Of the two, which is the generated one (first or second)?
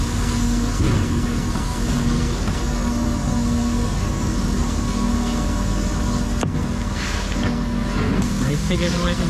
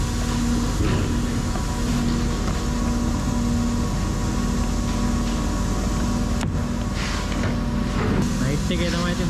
first